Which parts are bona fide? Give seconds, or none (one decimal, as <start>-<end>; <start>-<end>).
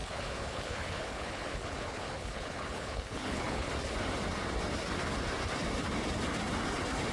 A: 3.7-7.1